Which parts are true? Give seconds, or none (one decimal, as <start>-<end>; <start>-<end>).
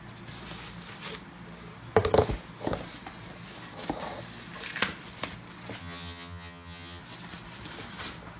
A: 0.0-5.8; 7.0-8.4